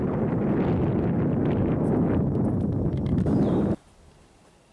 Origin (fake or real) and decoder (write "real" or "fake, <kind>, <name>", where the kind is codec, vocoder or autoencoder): real